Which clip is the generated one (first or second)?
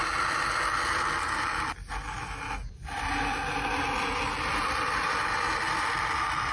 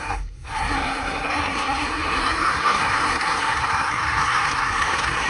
second